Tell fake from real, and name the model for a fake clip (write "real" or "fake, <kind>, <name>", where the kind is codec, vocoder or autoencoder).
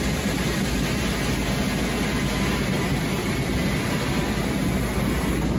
real